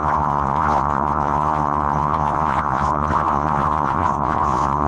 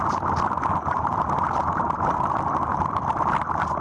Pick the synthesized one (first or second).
first